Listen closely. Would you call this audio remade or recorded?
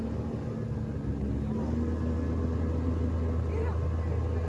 recorded